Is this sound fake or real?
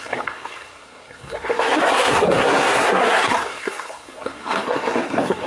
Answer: fake